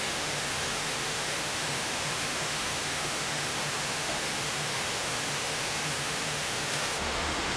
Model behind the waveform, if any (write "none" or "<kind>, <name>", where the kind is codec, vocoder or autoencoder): autoencoder, DAC-VAE